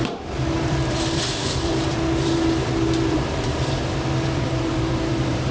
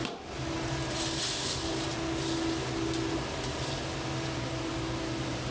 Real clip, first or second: second